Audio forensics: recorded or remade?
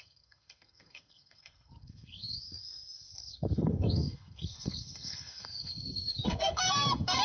remade